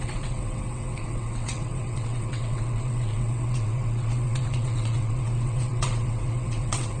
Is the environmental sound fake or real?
fake